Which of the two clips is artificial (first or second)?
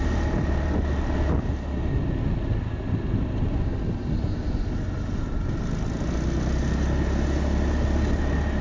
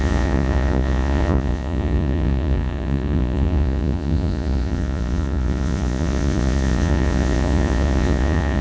second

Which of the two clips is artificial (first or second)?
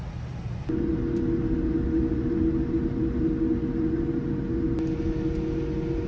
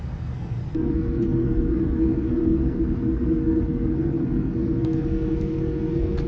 second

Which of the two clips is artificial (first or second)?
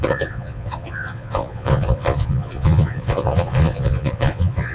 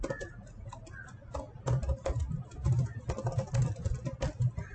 first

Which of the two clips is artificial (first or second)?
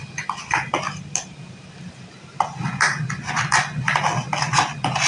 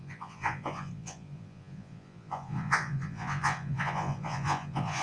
second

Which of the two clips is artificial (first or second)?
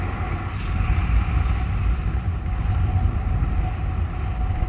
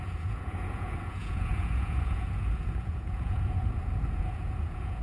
second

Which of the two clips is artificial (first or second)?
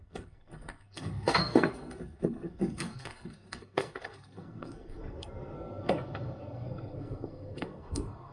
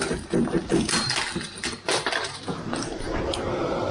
first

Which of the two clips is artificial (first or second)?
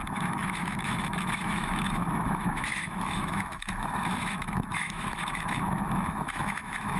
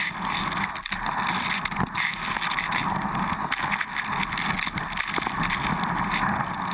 first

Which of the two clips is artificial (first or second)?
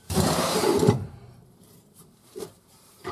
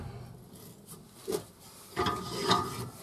first